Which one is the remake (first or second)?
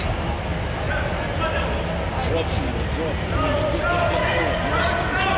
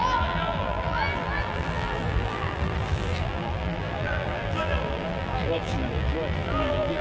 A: second